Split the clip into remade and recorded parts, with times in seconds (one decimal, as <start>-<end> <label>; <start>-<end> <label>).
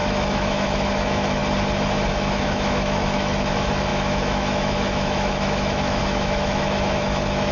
0.0-1.4 remade; 1.4-2.1 recorded; 2.1-7.5 remade